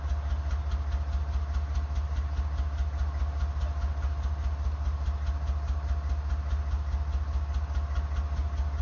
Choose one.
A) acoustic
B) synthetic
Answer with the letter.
A